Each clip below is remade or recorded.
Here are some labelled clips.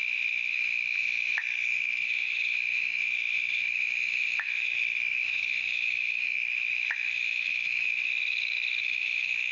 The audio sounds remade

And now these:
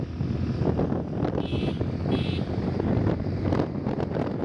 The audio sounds recorded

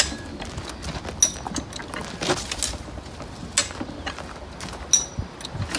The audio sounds recorded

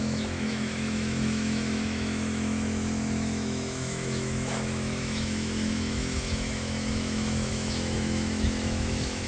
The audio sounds remade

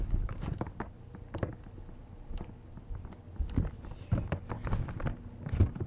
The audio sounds recorded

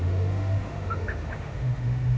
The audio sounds remade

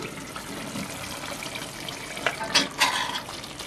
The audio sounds recorded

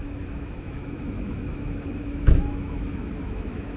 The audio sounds remade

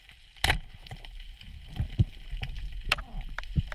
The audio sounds recorded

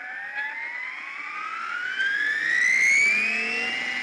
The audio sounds recorded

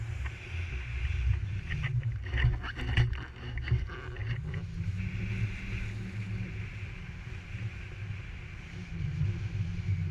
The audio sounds recorded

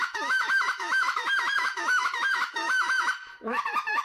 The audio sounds remade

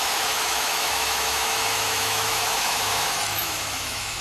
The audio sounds remade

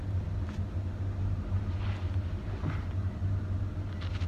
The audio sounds recorded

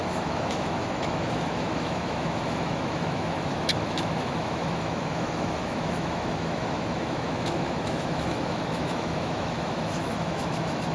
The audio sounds remade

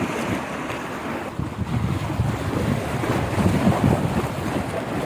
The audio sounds recorded